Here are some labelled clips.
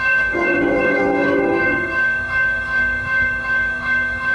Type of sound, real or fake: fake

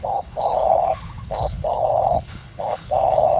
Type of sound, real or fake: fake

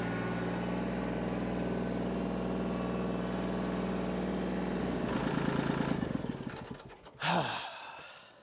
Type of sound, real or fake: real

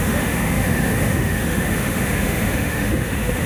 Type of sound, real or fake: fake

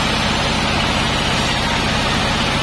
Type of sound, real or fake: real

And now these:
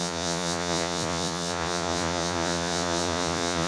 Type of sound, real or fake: fake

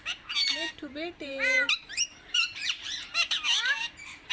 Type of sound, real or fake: fake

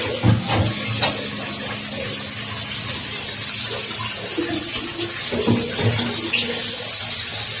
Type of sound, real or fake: real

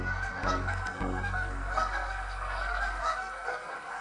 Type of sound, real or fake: fake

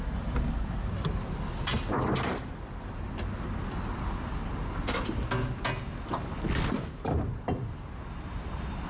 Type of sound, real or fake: real